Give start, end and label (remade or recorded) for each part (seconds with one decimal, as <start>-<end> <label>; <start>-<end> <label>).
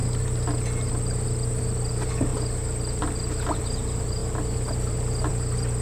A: 0.0-5.8 recorded